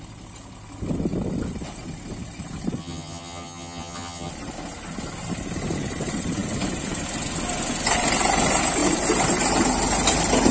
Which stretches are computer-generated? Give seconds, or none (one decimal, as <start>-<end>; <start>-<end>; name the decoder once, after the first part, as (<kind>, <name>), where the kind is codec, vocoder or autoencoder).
2.8-4.3 (vocoder, HiFi-GAN)

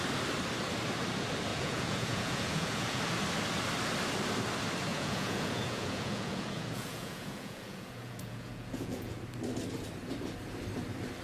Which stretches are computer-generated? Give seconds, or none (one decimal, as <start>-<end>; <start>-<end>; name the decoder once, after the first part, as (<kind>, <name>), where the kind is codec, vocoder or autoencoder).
1.5-3.0 (vocoder, Vocos); 4.9-9.2

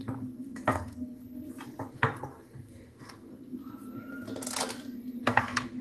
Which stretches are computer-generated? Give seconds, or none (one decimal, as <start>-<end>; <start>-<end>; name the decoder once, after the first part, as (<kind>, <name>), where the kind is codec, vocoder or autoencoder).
0.0-1.2 (codec, SNAC); 1.9-3.6; 5.2-5.8

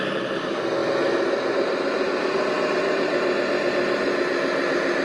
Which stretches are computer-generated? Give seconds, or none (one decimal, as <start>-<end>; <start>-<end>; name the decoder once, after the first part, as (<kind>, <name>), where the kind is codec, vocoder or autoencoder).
none

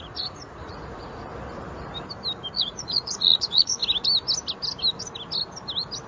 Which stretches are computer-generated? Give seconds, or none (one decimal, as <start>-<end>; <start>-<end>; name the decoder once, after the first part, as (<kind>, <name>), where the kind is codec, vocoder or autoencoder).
0.0-1.3 (vocoder, Vocos); 2.5-3.8